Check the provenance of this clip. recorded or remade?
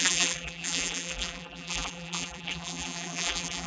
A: remade